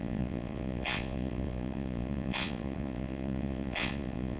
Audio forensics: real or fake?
fake